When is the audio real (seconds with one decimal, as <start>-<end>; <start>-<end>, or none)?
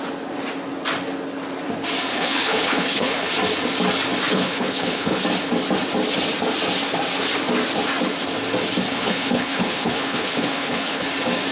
0.0-2.1; 3.3-4.3; 5.2-8.9; 11.1-11.5